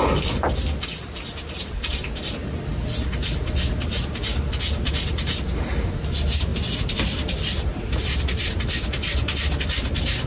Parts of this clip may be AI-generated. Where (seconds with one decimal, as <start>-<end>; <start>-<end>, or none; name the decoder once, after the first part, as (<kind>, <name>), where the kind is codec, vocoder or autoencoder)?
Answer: 6.5-8.5 (vocoder, BigVGAN v2)